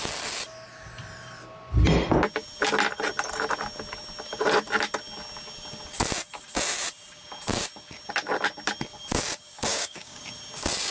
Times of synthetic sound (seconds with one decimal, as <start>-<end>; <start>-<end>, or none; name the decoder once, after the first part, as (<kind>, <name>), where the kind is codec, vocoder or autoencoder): 9.7-10.2 (codec, DAC)